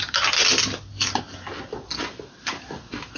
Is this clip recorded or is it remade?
recorded